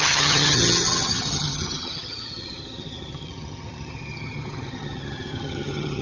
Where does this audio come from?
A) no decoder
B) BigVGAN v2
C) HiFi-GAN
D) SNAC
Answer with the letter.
C